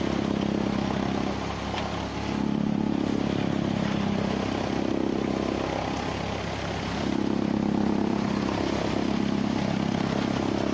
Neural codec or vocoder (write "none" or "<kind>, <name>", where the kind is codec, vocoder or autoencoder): none